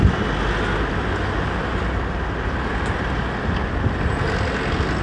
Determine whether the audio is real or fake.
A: real